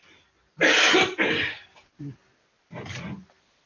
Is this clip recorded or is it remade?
recorded